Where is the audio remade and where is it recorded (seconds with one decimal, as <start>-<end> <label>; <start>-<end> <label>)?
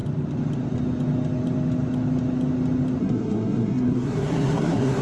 0.0-3.0 recorded; 3.0-5.0 remade